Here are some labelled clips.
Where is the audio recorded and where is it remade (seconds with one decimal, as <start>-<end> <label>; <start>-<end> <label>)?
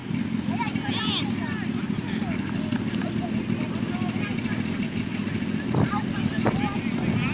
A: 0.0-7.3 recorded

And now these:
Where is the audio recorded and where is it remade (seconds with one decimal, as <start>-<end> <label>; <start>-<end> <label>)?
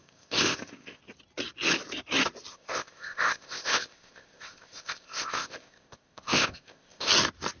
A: 0.0-1.0 remade; 1.0-2.5 recorded; 2.5-7.1 remade; 7.1-7.6 recorded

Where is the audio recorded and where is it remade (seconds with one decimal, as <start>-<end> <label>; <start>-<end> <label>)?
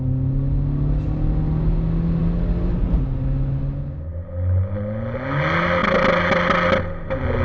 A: 0.0-7.4 recorded